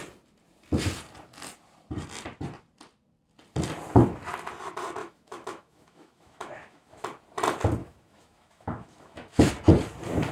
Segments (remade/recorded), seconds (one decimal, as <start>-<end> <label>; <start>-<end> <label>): 0.0-5.0 recorded; 5.0-7.0 remade; 7.0-7.8 recorded; 7.8-9.5 remade; 9.5-10.3 recorded